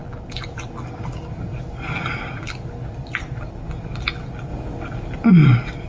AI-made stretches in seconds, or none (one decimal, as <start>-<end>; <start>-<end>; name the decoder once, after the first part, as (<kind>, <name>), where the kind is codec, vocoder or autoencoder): none